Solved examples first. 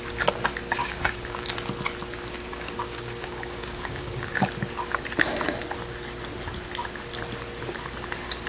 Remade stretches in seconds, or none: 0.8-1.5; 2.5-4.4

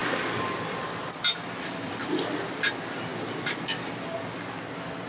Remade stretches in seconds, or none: 0.0-2.4

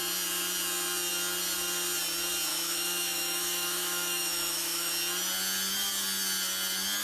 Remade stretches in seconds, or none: 2.5-4.9

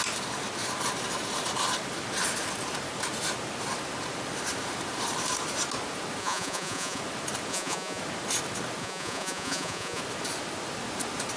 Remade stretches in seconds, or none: 6.2-7.0; 7.5-8.0; 8.8-10.0

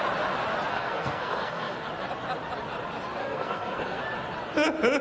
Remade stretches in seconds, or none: 0.7-1.9; 3.2-4.0

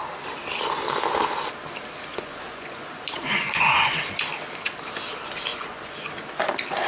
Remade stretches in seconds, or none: 2.1-4.0; 5.5-6.1

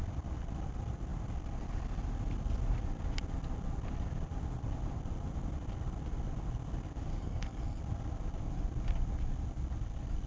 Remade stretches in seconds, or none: 7.1-7.8

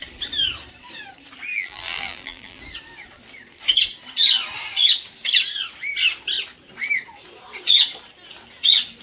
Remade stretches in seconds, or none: 1.5-2.6